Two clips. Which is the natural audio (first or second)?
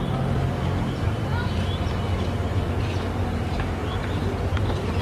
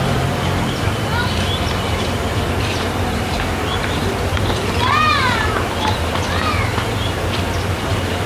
first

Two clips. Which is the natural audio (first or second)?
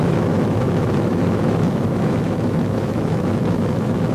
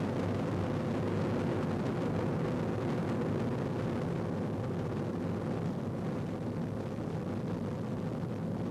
second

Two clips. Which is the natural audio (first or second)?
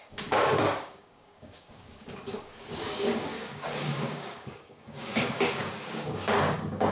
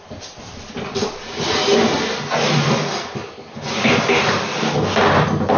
second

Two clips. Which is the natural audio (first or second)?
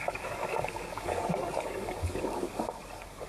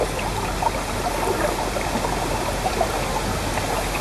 second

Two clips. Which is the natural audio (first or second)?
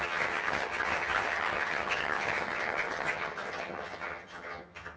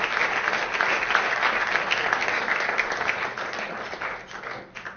second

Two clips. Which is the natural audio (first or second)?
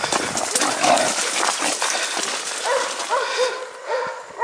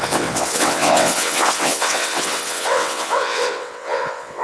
first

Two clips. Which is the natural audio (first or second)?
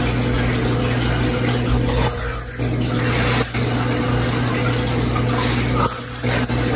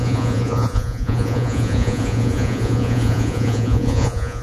first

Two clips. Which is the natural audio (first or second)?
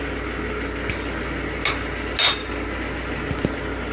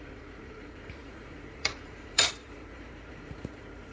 first